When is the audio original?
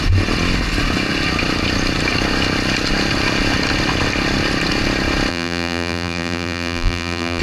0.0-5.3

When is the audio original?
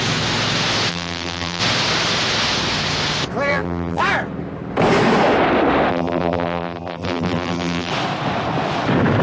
0.0-0.9; 1.6-3.5; 4.0-5.9; 7.9-9.2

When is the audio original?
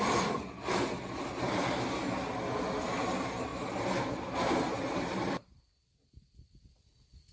0.0-3.5; 6.7-7.3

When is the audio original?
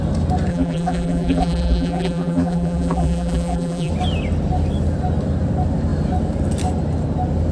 0.0-0.5; 3.9-7.5